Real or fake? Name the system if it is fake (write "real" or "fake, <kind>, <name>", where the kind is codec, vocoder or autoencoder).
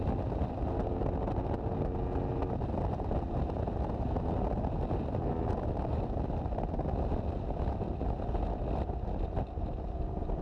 real